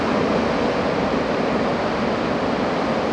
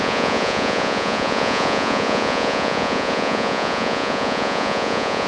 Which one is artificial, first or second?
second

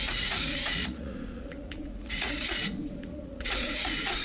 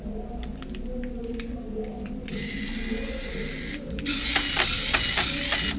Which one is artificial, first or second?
first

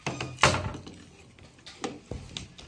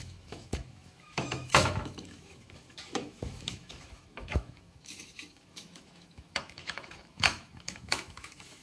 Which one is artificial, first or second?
second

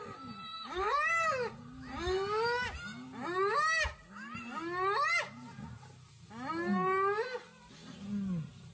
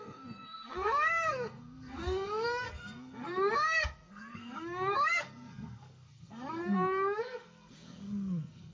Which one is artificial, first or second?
second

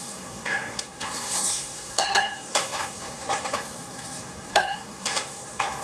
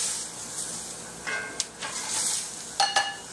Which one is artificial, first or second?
first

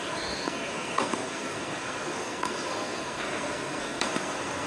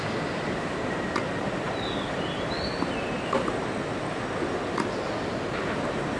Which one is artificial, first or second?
first